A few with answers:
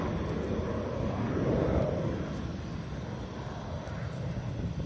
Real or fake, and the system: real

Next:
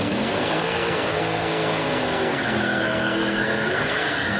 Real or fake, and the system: fake, codec, SNAC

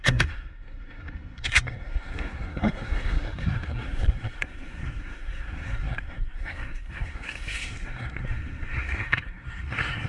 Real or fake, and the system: fake, codec, SNAC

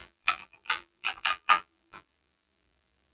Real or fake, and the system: fake, vocoder, BigVGAN v2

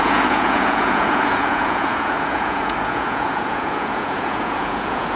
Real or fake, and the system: fake, vocoder, Vocos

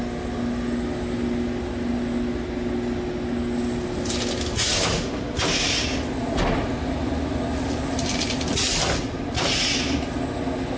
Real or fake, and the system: real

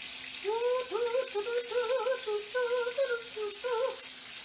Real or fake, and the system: real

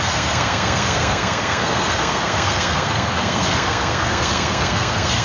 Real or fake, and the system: fake, codec, SNAC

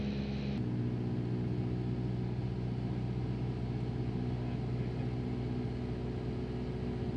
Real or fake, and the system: real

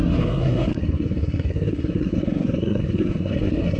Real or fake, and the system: fake, codec, SNAC